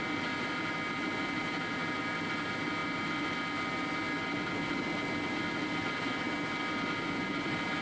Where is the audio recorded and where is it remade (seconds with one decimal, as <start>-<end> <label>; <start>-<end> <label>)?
0.0-7.8 recorded